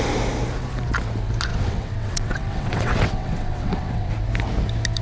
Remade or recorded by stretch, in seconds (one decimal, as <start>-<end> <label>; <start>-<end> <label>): 0.0-1.5 recorded; 1.5-4.1 remade; 4.1-5.0 recorded